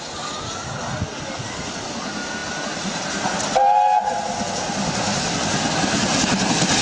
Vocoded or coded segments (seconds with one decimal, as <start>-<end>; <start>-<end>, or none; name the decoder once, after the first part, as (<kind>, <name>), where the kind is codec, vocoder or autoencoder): none